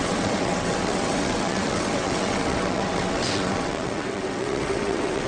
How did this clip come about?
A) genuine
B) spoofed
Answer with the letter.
B